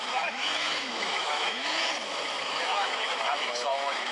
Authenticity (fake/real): fake